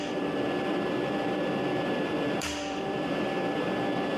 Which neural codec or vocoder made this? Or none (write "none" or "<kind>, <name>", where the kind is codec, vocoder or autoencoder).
vocoder, BigVGAN v2